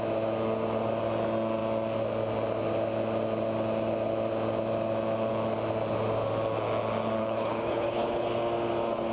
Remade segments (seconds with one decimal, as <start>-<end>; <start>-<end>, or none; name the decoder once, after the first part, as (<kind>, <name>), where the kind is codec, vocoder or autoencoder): 7.2-8.4 (codec, HILCodec)

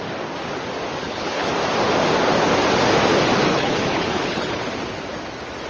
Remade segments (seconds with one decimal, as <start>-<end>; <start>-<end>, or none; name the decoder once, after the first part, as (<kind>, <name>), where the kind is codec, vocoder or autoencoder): 1.0-1.5 (codec, HILCodec); 3.5-4.7

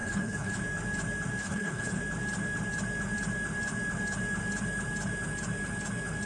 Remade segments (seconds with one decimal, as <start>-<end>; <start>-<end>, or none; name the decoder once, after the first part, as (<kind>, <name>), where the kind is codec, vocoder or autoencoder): 0.0-0.5 (codec, HILCodec); 1.4-2.0

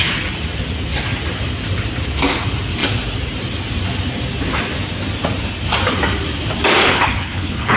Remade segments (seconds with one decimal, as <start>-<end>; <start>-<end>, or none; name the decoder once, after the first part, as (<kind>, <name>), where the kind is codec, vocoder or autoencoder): 6.8-7.8 (codec, HILCodec)

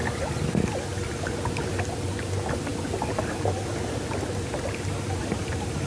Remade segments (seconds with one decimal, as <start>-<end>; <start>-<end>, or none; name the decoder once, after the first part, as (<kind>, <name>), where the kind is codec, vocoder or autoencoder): none

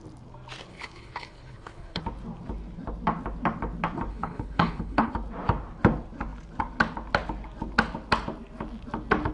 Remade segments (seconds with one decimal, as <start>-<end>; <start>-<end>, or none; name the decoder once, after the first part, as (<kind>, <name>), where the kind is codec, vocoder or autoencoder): 0.7-2.0 (codec, HILCodec); 4.1-5.1

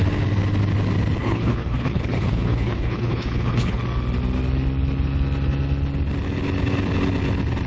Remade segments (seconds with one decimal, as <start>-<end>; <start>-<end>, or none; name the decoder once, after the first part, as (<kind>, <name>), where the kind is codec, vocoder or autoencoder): 1.2-3.8 (codec, HILCodec)